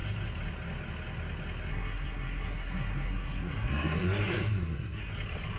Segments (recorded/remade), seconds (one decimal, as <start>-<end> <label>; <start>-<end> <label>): 0.0-1.7 recorded; 1.7-5.1 remade; 5.1-5.6 recorded